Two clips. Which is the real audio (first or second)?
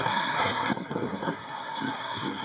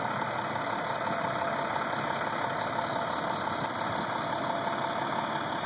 second